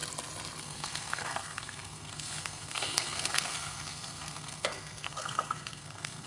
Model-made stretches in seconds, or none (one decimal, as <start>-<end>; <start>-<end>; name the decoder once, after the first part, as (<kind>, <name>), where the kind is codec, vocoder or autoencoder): 0.6-6.3 (codec, SNAC)